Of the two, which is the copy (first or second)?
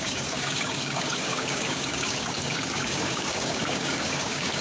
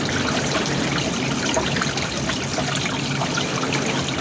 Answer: first